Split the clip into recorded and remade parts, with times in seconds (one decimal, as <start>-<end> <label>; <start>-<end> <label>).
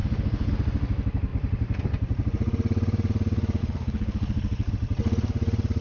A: 0.0-0.5 remade; 0.5-3.6 recorded; 3.6-4.7 remade; 4.7-5.8 recorded